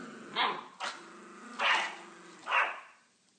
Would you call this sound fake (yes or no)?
no